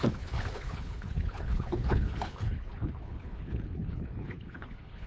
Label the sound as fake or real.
fake